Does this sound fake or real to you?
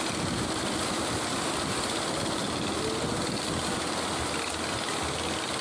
real